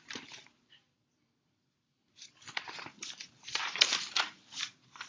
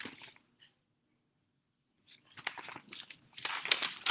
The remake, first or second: first